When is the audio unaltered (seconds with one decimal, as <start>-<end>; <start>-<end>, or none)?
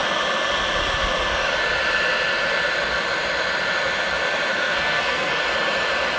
0.0-4.5; 5.4-6.2